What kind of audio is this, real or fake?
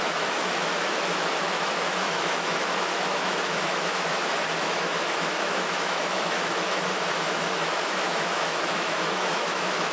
fake